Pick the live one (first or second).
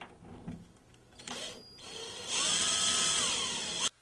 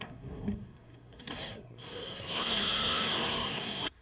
first